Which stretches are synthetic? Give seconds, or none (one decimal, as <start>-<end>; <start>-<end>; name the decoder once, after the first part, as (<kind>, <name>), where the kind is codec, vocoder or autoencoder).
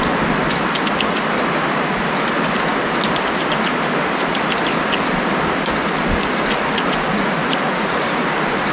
7.1-8.2 (vocoder, Vocos)